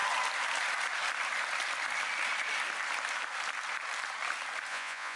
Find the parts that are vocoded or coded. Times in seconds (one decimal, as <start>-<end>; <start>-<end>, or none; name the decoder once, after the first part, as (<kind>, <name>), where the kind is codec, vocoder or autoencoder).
4.7-5.2 (vocoder, Vocos)